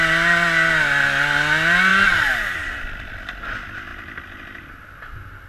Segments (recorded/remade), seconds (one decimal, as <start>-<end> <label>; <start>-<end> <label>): 0.0-1.9 recorded; 1.9-3.4 remade; 3.4-5.5 recorded